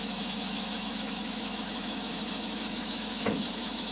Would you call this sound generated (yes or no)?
yes